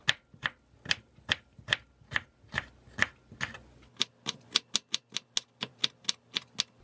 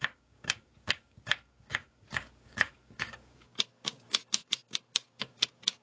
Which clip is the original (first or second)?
first